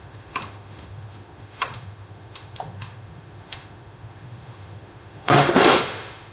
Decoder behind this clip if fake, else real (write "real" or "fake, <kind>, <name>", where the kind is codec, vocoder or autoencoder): fake, autoencoder, DAC-VAE